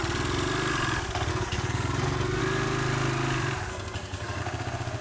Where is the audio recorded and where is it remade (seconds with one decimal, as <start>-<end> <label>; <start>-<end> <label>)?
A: 0.0-1.3 recorded; 1.3-2.4 remade; 2.4-3.7 recorded; 3.7-4.4 remade; 4.4-5.0 recorded